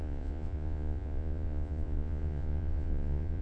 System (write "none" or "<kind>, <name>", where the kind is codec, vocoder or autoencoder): vocoder, Vocos